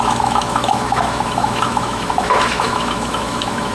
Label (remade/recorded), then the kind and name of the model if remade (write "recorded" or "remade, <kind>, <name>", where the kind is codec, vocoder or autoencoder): remade, autoencoder, DAC-VAE